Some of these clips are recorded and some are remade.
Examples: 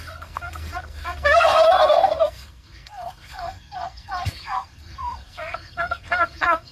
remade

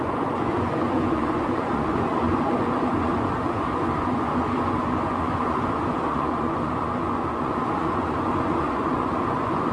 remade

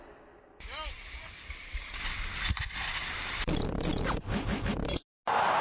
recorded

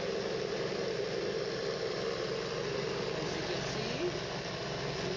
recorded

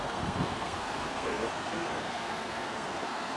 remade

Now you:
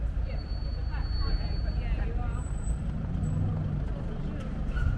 recorded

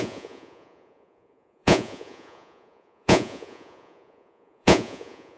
remade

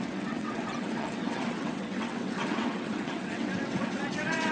remade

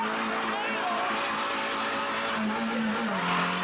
recorded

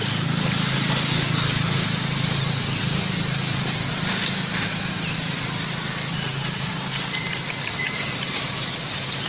recorded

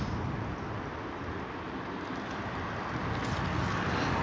recorded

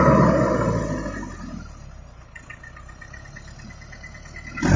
recorded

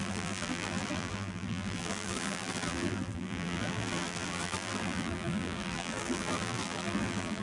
remade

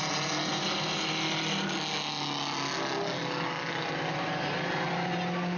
recorded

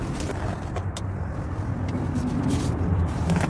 remade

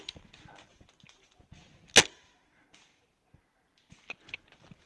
recorded